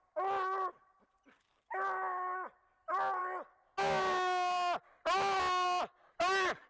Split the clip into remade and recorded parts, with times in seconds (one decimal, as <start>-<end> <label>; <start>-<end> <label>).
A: 0.0-6.7 recorded